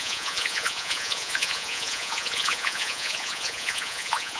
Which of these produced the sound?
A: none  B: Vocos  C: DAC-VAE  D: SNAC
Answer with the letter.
B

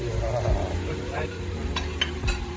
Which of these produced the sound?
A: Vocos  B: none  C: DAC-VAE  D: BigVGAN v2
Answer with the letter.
D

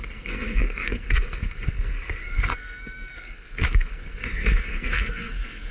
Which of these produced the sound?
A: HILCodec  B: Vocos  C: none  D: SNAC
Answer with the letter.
D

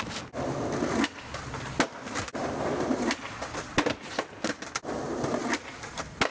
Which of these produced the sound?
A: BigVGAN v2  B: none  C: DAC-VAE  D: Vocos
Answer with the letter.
B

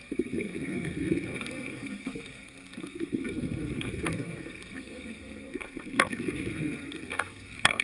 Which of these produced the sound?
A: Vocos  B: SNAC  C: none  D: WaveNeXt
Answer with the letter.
B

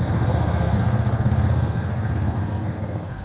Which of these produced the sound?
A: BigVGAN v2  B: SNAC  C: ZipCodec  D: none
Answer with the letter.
B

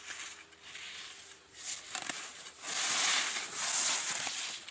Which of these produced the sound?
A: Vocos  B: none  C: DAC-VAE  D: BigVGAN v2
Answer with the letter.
B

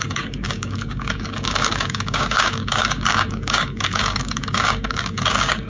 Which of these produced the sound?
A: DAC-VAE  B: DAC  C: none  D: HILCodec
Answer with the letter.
B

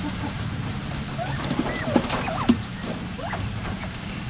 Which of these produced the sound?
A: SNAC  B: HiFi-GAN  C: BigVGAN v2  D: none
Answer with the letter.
C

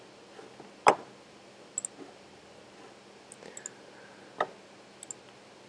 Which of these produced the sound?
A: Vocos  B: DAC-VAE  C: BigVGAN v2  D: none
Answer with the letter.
D